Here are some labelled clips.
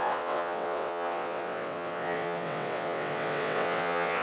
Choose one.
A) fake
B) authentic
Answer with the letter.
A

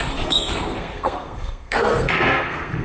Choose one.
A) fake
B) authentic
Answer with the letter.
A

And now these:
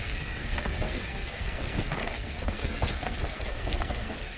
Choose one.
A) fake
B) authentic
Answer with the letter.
A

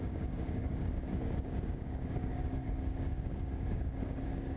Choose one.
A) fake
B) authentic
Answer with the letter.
A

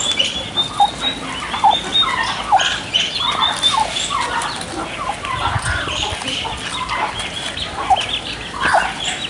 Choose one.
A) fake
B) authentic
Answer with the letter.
B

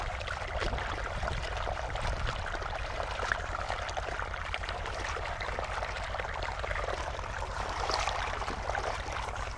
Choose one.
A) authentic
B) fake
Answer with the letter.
B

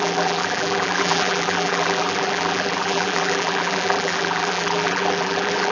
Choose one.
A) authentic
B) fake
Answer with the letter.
B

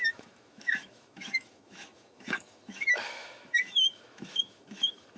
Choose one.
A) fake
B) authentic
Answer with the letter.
A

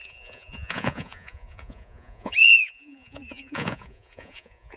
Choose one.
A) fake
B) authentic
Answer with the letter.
A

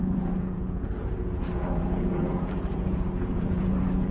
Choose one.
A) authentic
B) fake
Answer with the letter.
B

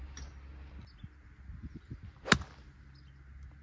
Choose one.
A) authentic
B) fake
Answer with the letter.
A